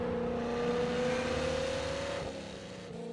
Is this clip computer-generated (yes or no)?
no